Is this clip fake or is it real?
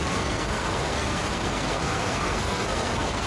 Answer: fake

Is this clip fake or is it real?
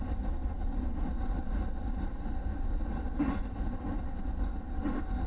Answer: real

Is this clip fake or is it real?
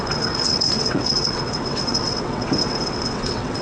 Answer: fake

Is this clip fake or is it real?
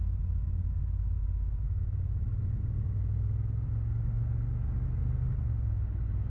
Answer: real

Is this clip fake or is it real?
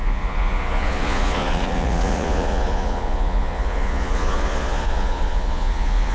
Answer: fake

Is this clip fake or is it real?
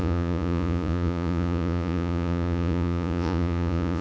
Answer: fake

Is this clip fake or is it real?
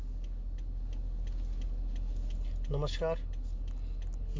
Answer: real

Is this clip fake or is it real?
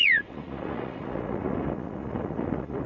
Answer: fake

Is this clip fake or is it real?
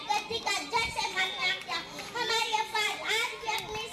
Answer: real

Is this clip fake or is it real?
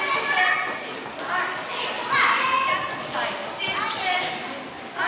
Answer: real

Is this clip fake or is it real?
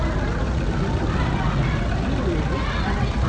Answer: real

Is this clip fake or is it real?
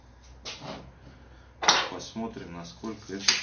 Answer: real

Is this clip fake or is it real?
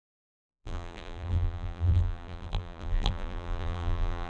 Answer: fake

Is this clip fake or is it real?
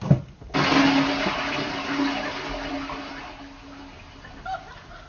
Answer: real